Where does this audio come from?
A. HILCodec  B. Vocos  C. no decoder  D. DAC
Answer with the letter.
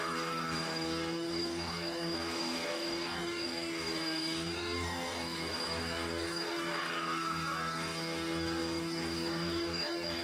D